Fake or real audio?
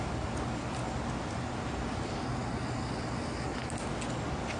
real